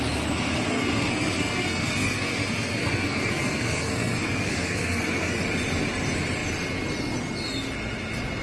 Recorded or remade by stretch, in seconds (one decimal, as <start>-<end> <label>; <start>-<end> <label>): 0.0-0.7 recorded; 0.7-5.4 remade; 5.4-8.4 recorded